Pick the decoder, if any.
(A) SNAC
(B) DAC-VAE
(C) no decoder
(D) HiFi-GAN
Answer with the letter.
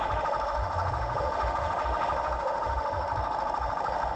B